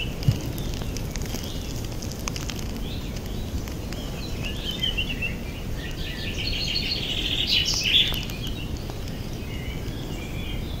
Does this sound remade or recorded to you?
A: recorded